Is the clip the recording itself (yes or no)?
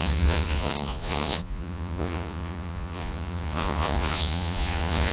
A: no